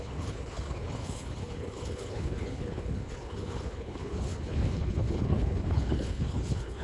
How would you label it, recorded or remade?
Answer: remade